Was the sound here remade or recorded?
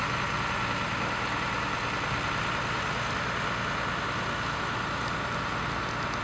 recorded